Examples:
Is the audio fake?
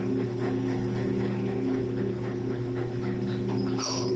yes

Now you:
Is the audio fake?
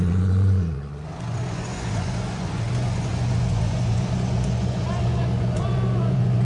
yes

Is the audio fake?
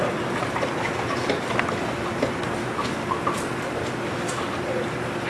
no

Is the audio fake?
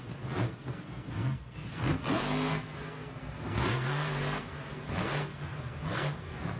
yes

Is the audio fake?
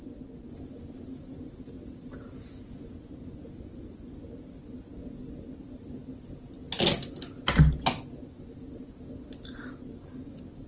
no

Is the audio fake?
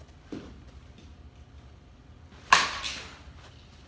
no